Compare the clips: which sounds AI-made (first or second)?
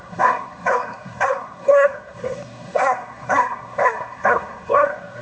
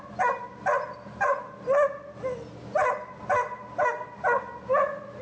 first